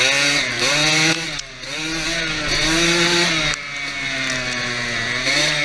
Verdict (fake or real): real